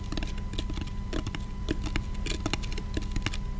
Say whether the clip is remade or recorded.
recorded